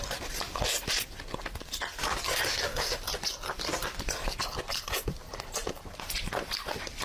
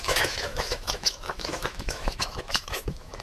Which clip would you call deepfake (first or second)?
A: second